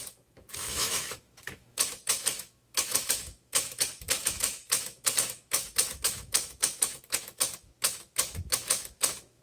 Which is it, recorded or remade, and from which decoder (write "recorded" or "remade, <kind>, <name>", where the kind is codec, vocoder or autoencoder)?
remade, autoencoder, DAC-VAE